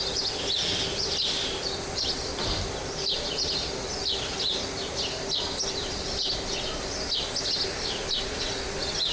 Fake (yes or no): no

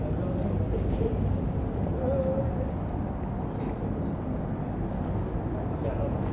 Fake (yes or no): no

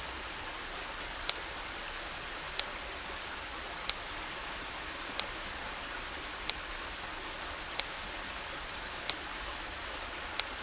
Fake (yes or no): no